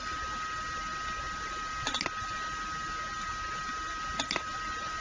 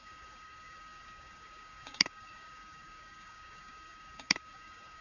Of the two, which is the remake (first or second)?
second